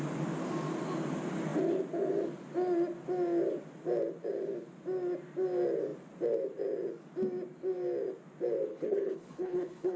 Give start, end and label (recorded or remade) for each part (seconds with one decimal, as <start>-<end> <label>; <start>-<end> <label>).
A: 0.0-8.7 recorded; 8.7-10.0 remade